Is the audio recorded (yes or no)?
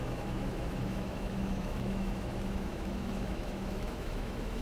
no